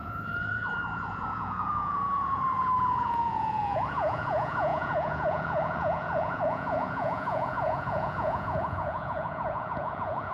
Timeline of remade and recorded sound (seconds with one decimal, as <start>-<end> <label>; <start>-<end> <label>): 0.0-10.3 remade